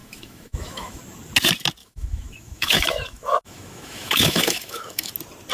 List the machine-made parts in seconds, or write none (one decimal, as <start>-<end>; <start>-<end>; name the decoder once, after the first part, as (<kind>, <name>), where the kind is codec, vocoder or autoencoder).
0.0-1.0 (autoencoder, DAC-VAE); 1.8-5.1